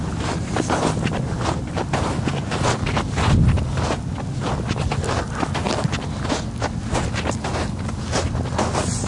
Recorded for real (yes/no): yes